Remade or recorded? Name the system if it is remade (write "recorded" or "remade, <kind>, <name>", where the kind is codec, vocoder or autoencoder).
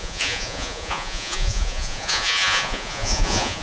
remade, vocoder, Vocos